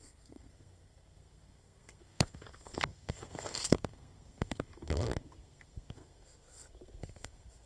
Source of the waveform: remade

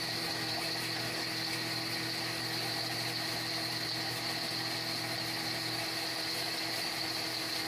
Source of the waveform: recorded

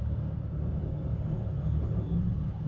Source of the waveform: recorded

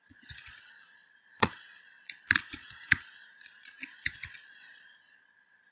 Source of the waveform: remade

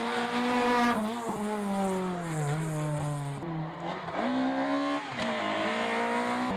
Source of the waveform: recorded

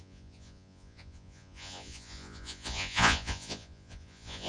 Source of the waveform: remade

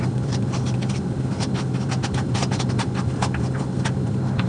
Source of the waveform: recorded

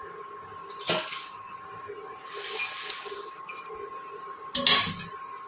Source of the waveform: recorded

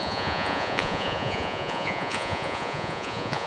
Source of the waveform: remade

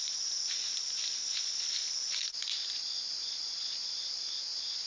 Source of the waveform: recorded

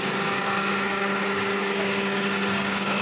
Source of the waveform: remade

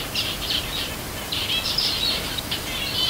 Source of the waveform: remade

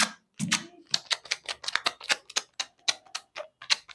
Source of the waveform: recorded